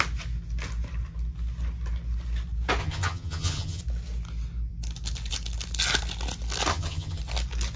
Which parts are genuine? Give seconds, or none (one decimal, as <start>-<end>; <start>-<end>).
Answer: 0.0-2.8; 3.8-6.7; 7.2-7.8